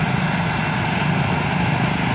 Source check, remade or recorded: recorded